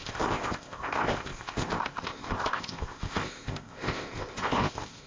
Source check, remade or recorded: remade